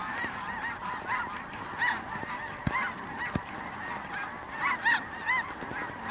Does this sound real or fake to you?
real